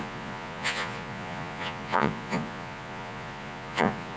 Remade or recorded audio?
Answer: remade